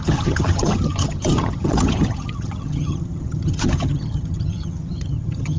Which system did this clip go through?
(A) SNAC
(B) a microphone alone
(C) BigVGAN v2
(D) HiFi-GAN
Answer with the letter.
D